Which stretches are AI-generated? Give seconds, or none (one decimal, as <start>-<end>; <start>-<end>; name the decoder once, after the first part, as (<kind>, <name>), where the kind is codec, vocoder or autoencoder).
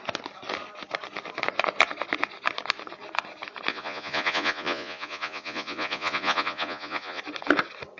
3.7-7.2 (vocoder, Vocos)